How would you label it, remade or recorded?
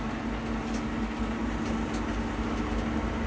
recorded